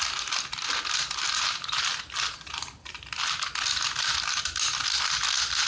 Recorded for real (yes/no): yes